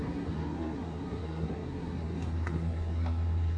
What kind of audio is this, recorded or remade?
remade